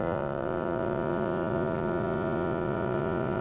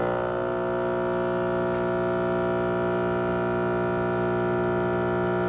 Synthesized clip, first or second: first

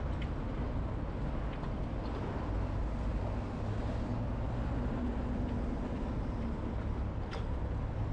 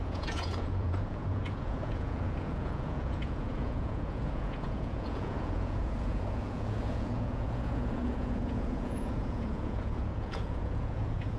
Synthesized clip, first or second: second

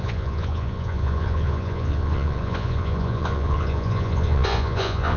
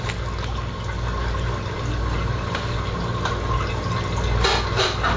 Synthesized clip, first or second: first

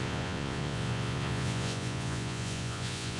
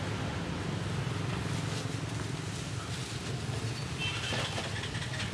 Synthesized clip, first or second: first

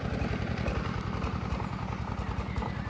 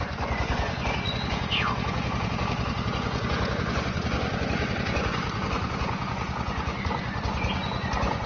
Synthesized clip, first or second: second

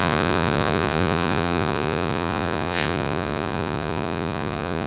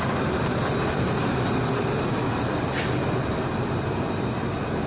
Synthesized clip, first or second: first